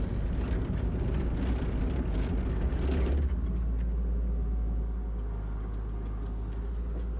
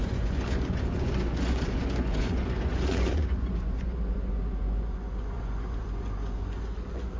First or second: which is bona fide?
first